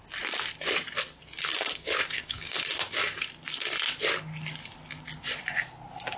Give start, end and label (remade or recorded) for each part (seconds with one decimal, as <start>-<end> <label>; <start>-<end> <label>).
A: 0.0-1.5 recorded; 1.5-2.7 remade; 2.7-6.2 recorded